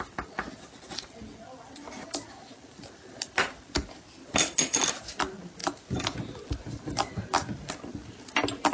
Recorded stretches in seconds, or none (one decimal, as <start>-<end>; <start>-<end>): 0.0-8.7